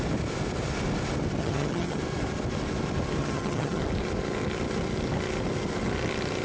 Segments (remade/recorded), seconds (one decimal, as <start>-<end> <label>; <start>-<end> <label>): 0.0-1.4 recorded; 1.4-2.0 remade; 2.0-3.2 recorded; 3.2-3.8 remade; 3.8-6.4 recorded